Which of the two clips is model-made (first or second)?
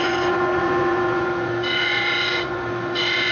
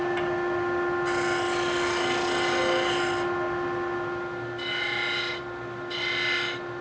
first